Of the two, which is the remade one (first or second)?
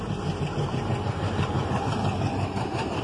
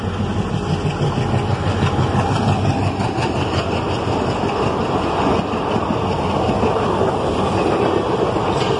first